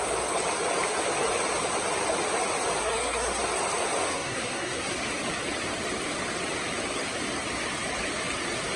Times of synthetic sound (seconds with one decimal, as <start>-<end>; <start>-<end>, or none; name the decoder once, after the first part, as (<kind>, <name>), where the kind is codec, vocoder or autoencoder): 2.8-3.4 (codec, SNAC); 4.1-4.9